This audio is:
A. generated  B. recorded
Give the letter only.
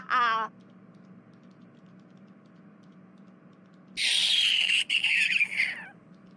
B